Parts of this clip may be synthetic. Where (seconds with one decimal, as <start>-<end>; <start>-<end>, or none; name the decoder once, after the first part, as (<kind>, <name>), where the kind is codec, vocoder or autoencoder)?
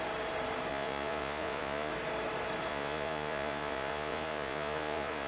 0.7-1.9 (vocoder, Vocos); 2.7-5.3